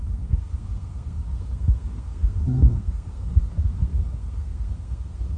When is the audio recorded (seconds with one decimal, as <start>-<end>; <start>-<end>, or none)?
none